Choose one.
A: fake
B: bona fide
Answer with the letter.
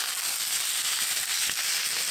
B